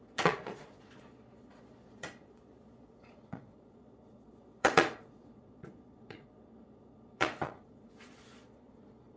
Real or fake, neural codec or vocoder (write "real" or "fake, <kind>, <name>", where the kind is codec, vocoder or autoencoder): fake, vocoder, Vocos